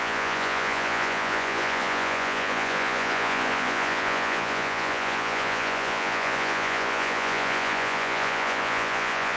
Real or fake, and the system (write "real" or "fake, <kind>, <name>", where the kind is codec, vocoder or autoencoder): fake, vocoder, Vocos